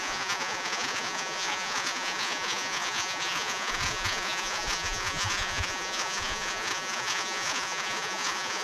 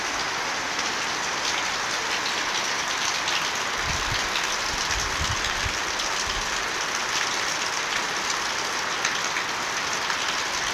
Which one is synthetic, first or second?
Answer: first